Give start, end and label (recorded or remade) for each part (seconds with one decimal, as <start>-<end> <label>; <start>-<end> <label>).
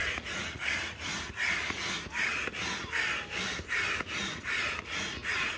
0.0-1.1 remade; 1.1-4.0 recorded; 4.0-5.6 remade